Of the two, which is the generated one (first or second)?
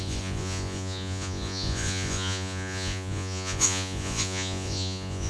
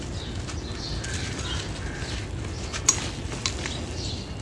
first